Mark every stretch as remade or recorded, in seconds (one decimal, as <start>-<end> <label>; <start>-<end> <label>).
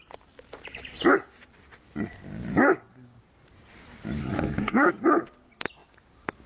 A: 0.0-4.2 recorded; 4.2-4.9 remade; 4.9-6.5 recorded